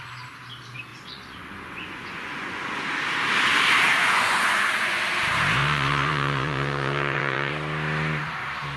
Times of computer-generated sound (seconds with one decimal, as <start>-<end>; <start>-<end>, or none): 0.9-2.8; 4.0-5.0; 5.6-7.5